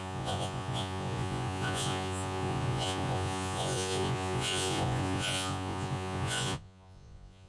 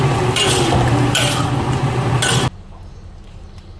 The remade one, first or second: first